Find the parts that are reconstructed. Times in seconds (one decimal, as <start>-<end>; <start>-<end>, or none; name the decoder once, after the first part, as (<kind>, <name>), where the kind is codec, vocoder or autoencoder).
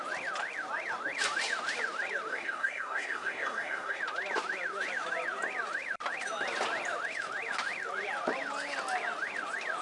2.3-4.0 (codec, SNAC)